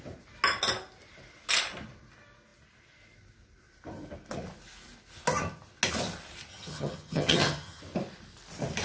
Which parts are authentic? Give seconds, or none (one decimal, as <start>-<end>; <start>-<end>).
0.0-6.5; 7.8-8.8